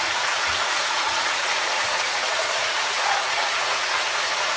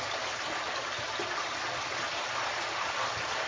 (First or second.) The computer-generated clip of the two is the first